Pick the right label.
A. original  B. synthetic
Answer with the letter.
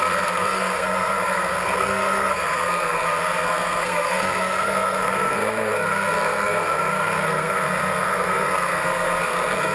B